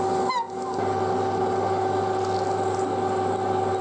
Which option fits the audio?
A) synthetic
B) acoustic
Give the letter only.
B